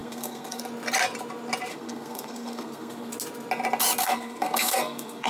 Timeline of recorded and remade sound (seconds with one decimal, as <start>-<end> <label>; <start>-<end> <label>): 0.0-0.6 remade; 0.6-1.7 recorded; 1.7-3.1 remade; 3.1-4.0 recorded; 4.0-5.3 remade